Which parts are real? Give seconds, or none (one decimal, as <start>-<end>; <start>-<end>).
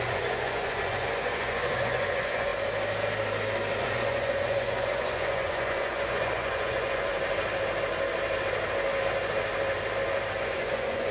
2.5-3.8; 7.1-10.4